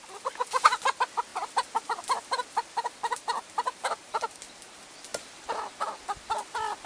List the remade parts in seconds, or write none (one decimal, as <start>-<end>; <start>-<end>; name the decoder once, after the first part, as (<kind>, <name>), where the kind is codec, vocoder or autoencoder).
1.3-4.5 (vocoder, BigVGAN v2)